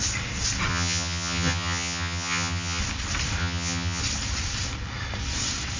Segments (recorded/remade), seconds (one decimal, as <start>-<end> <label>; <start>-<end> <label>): 0.0-0.7 recorded; 0.7-2.8 remade; 2.8-3.4 recorded; 3.4-4.0 remade; 4.0-5.8 recorded